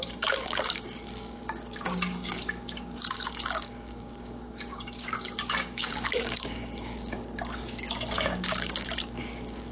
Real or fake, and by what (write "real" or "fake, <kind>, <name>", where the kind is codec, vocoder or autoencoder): fake, codec, DAC